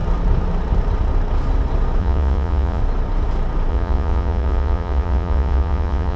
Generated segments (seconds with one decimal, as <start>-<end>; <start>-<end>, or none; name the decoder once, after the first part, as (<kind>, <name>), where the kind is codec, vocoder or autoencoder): 2.0-2.8 (vocoder, Vocos); 3.7-6.2